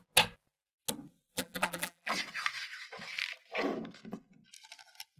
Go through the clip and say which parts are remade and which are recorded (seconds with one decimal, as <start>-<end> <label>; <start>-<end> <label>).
0.0-1.3 recorded; 1.3-2.1 remade; 2.1-5.2 recorded